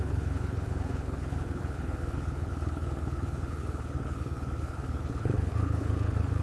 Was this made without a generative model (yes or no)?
no